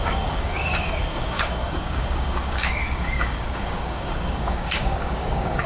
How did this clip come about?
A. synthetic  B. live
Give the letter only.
A